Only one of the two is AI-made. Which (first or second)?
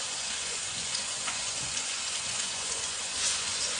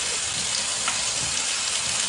first